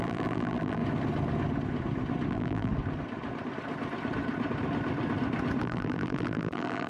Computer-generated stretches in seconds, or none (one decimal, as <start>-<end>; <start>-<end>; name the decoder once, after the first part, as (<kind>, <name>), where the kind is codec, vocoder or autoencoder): 0.0-0.8 (vocoder, BigVGAN v2); 2.3-2.7; 5.6-6.9

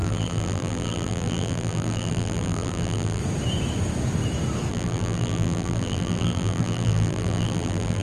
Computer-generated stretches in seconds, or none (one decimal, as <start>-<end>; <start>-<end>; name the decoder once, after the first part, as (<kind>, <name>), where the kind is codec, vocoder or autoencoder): 0.0-3.2 (vocoder, BigVGAN v2); 4.7-8.0

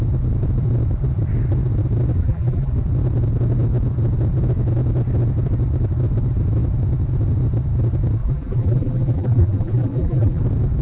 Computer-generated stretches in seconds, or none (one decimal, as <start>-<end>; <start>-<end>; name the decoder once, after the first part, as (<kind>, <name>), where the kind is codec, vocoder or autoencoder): 2.2-2.7 (vocoder, BigVGAN v2); 8.2-10.4

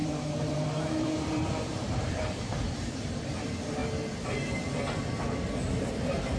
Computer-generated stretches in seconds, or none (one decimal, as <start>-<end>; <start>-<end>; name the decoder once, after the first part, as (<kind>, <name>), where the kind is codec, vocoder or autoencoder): 0.0-3.8 (vocoder, BigVGAN v2); 5.9-6.4

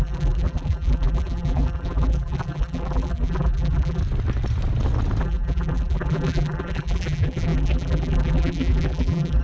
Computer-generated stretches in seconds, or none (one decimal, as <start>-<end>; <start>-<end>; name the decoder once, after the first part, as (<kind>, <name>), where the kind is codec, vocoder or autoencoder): 0.0-4.0 (vocoder, BigVGAN v2); 5.2-9.4

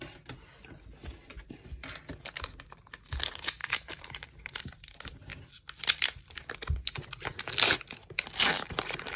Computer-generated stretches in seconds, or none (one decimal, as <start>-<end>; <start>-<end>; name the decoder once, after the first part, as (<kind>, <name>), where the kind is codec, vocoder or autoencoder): 0.0-1.7 (vocoder, BigVGAN v2); 2.7-5.3; 8.5-9.2

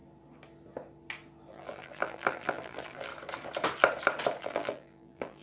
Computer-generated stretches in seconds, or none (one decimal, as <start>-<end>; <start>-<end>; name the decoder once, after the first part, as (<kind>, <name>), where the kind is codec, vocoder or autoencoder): 1.5-3.1 (vocoder, BigVGAN v2); 4.4-5.4